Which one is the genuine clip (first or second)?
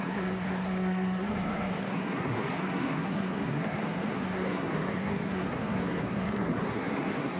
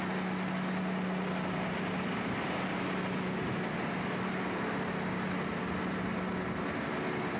second